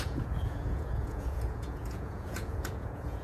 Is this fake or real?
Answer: fake